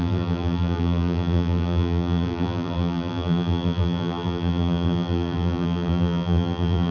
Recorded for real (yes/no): no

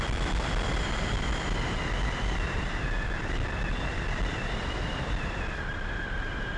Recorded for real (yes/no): no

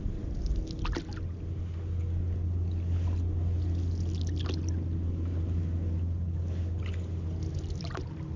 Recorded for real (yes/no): yes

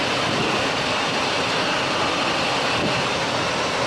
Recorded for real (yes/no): no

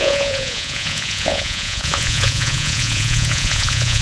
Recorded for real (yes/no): no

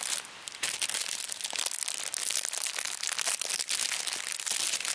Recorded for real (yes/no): yes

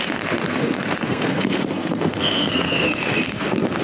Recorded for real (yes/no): no